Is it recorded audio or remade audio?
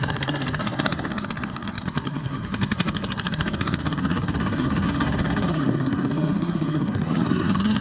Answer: remade